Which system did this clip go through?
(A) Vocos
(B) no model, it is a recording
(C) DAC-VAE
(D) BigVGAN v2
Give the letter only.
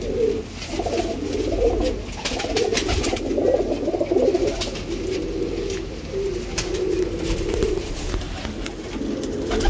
B